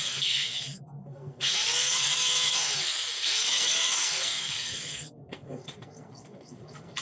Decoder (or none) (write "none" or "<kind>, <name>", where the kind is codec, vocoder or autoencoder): codec, SNAC